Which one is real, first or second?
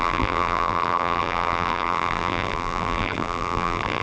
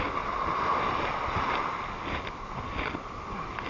second